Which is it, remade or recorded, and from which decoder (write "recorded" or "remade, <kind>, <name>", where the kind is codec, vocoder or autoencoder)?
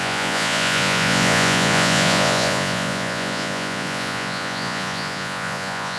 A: remade, vocoder, Vocos